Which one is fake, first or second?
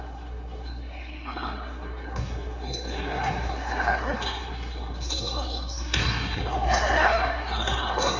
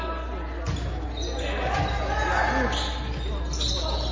first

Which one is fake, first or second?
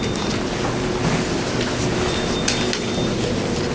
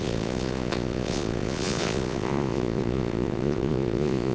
second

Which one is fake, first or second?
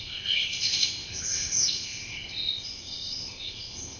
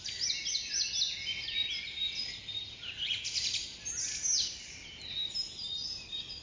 first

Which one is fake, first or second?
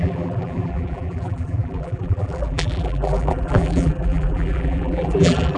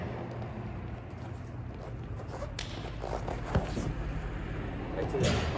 first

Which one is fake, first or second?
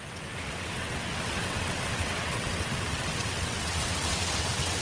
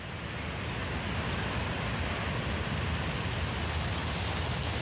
first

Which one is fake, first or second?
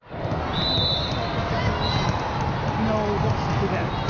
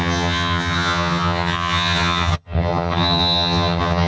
second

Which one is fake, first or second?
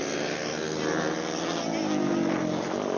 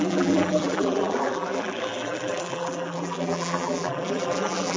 second